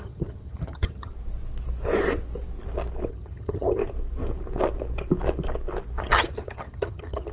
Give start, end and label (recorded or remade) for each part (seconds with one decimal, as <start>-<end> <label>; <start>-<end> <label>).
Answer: 0.0-1.1 remade; 1.1-3.1 recorded; 3.1-3.8 remade; 3.8-6.0 recorded; 6.0-7.3 remade